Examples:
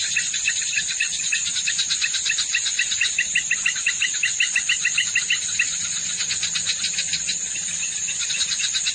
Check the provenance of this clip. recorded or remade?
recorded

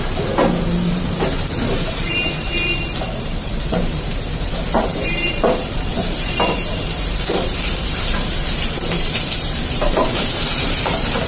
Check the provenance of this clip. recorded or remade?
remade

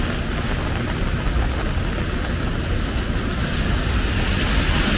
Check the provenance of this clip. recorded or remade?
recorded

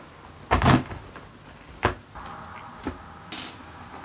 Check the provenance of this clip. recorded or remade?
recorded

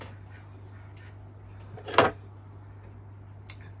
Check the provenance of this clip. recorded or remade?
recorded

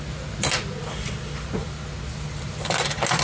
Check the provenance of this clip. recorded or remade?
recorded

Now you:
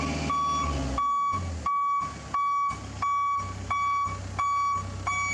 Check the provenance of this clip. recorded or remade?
recorded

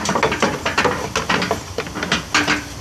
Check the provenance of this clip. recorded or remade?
recorded